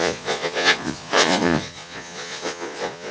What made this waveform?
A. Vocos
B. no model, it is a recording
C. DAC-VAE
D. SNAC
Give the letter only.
A